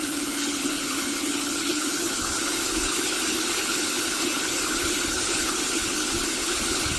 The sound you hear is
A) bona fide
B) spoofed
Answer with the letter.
B